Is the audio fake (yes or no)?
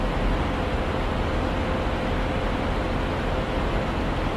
no